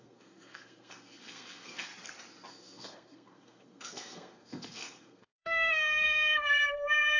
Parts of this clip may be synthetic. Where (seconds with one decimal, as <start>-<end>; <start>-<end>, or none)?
0.0-1.9; 2.5-7.2